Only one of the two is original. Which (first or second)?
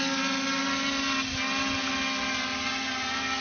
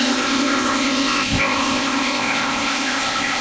first